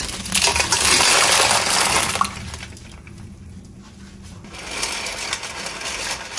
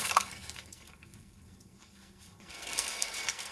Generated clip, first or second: second